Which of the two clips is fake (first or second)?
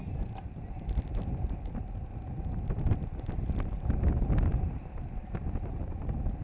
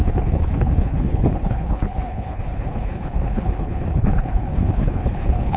second